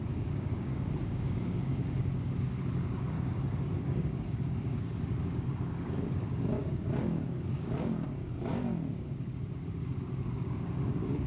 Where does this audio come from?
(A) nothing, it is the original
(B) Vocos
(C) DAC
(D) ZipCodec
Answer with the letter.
C